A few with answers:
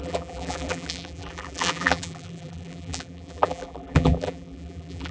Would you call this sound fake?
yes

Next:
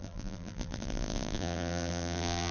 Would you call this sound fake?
yes